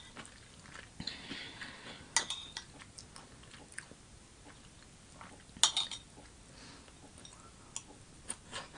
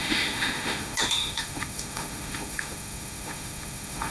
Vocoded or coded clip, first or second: second